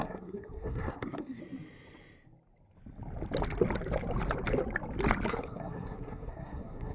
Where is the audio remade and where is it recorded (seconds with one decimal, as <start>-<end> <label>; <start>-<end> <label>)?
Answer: 0.0-1.4 remade; 1.4-5.3 recorded; 5.3-6.9 remade